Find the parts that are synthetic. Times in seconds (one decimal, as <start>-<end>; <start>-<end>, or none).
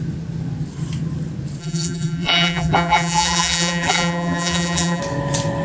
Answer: 1.6-5.0